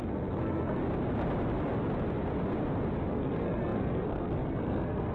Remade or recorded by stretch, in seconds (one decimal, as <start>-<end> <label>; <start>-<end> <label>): 0.0-0.8 remade; 0.8-3.1 recorded; 3.1-5.1 remade